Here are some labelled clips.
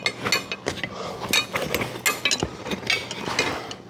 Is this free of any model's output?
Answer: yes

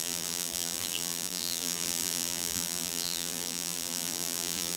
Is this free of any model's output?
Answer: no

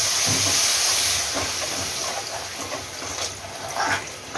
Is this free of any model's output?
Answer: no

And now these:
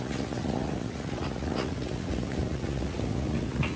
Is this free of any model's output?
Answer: no